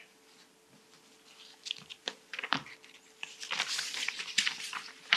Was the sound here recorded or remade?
remade